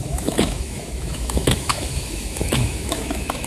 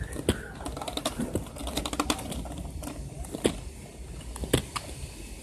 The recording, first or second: second